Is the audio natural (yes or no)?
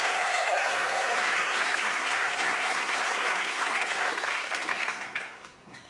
no